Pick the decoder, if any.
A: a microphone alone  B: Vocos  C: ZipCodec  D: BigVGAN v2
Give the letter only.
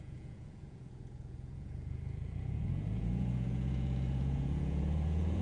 B